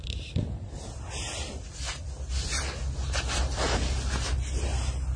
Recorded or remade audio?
recorded